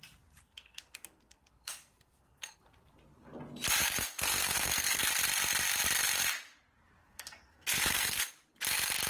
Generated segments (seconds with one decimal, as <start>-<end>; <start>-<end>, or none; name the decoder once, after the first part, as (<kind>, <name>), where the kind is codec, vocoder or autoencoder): 0.4-2.6 (codec, SNAC); 3.8-5.1; 7.0-8.3